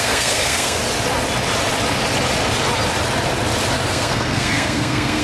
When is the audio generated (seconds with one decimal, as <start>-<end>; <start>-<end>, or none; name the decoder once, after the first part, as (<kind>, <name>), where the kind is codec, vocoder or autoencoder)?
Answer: 0.0-0.8 (codec, SNAC); 3.9-5.2